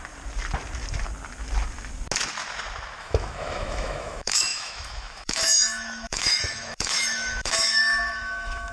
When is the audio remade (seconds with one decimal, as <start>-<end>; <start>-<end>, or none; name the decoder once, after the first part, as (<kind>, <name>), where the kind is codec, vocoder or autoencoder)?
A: 3.0-8.7 (autoencoder, DAC-VAE)